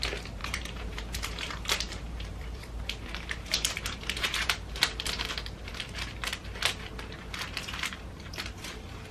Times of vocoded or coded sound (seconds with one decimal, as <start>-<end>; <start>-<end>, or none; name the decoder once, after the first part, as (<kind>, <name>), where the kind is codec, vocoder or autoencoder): 0.4-5.3 (vocoder, BigVGAN v2)